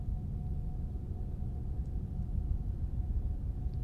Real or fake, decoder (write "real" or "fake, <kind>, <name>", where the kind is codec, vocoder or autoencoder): real